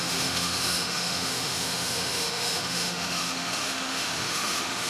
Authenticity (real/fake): fake